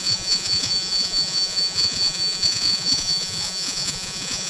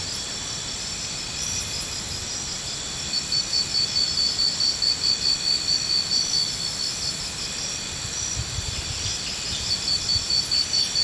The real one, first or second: second